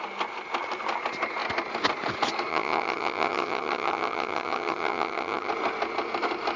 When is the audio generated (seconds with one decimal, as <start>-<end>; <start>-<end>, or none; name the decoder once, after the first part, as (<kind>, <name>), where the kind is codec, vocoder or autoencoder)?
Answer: 2.5-5.5 (vocoder, HiFi-GAN)